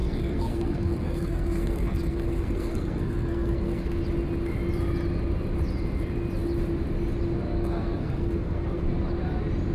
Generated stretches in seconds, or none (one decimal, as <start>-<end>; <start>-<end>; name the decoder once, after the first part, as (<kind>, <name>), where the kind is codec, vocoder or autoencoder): 0.0-4.0 (codec, SNAC); 7.5-8.8

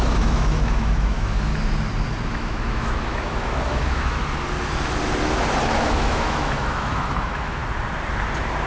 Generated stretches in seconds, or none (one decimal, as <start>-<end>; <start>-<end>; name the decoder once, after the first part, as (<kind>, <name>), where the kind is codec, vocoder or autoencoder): 0.0-1.5 (autoencoder, DAC-VAE); 2.3-4.2; 5.8-7.6

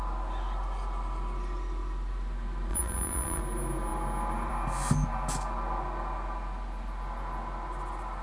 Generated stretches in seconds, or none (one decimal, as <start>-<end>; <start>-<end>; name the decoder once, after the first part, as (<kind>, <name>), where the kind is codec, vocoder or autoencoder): 2.7-3.4 (vocoder, BigVGAN v2)